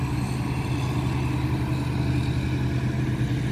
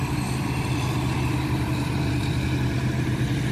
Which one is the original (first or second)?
first